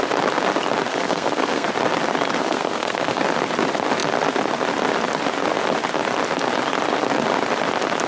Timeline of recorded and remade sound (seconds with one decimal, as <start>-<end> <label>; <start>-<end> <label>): 0.0-0.9 recorded; 0.9-1.7 remade; 1.7-2.4 recorded; 2.4-3.2 remade; 3.2-8.1 recorded